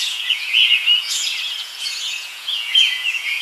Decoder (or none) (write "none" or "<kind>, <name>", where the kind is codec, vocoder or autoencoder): vocoder, Vocos